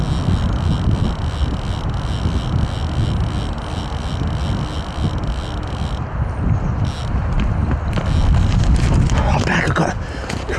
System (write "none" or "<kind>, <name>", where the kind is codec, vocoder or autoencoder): none